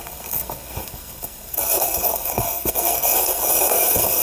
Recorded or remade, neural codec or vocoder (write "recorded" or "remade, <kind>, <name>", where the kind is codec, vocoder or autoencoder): remade, codec, SNAC